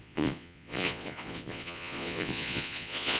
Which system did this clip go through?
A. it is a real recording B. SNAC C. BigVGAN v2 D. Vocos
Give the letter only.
D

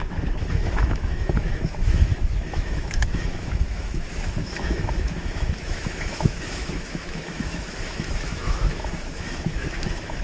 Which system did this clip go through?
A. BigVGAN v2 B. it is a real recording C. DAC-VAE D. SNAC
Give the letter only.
C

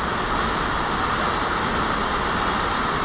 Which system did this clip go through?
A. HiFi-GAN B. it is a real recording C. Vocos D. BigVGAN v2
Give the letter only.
B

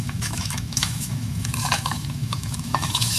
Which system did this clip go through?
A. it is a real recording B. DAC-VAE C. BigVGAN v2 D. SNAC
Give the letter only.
B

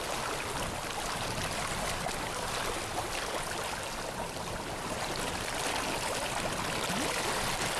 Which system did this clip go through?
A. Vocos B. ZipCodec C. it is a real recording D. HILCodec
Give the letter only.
C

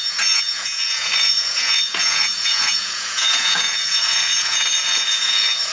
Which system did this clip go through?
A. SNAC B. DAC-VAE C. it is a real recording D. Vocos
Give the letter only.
D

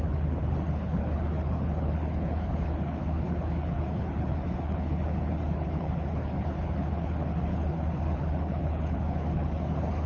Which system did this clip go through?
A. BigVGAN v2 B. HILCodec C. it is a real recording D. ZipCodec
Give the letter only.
B